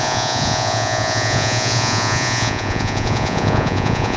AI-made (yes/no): yes